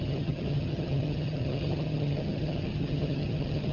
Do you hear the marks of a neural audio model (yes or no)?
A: yes